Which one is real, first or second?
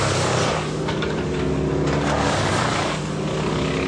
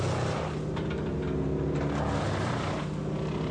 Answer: second